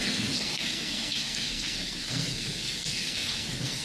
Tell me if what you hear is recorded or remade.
remade